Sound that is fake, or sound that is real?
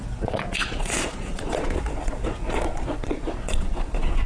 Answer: fake